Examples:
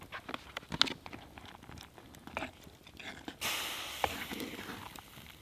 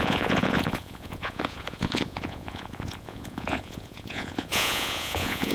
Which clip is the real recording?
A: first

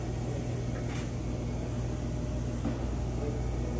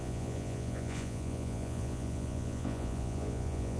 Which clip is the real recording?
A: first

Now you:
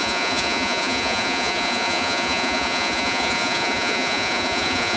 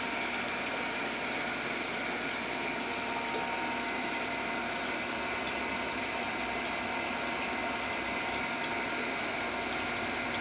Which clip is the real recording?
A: second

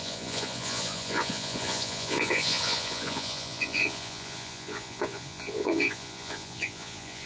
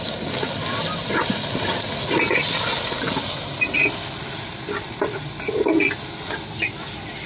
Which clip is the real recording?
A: second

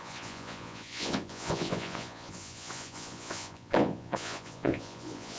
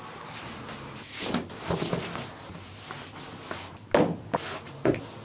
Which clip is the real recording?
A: second